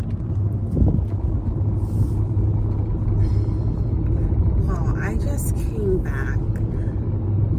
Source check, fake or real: real